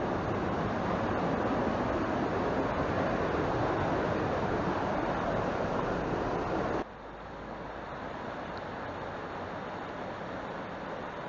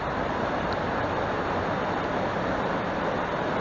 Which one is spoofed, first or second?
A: second